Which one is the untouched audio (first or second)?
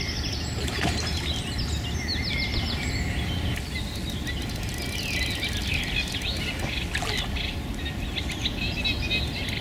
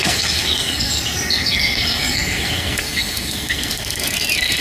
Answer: first